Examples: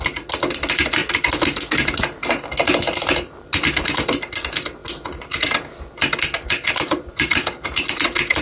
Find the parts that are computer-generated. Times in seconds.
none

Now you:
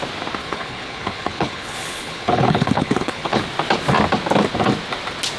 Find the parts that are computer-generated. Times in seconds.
0.4-3.4